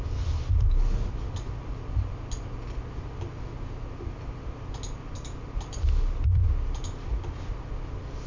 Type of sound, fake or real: real